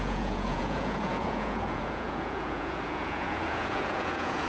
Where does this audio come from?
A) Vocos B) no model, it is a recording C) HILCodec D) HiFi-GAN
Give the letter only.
A